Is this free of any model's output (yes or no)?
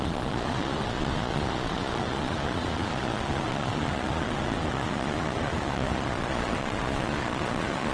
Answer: no